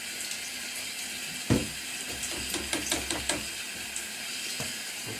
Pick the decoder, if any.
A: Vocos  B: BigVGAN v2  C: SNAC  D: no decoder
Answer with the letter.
D